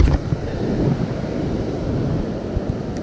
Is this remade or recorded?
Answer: recorded